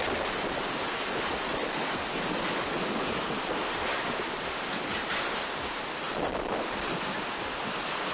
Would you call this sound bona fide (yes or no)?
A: no